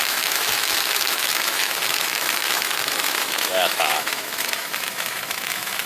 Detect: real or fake fake